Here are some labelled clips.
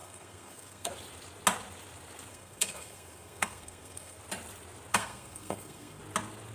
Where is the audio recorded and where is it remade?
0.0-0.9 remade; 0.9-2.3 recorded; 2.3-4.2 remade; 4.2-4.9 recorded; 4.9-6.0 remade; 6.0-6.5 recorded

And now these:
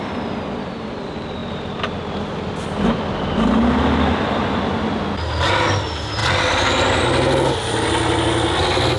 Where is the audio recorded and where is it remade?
0.0-9.0 recorded

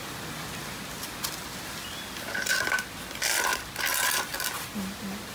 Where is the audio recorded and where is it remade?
0.0-5.3 recorded